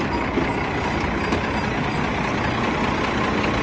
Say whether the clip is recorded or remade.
recorded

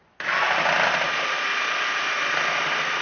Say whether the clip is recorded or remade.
recorded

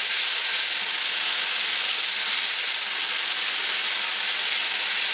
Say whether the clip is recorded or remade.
recorded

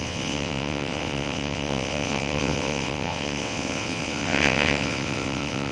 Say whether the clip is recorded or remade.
remade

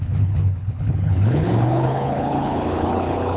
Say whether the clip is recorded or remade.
remade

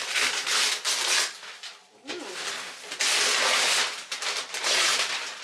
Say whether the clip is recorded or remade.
recorded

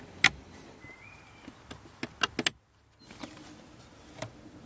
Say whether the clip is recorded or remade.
recorded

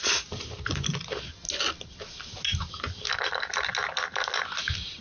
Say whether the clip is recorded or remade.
recorded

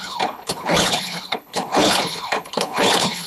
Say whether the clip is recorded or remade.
remade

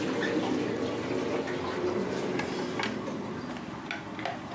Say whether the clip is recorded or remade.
recorded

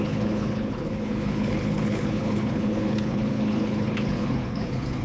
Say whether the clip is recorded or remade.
remade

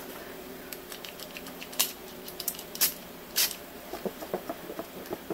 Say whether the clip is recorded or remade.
remade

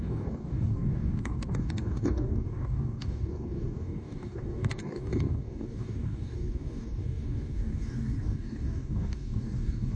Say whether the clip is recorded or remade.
remade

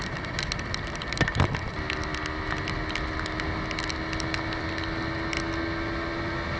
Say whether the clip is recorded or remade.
recorded